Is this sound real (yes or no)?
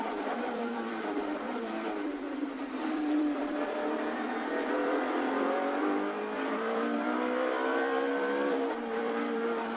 no